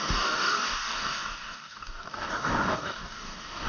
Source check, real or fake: fake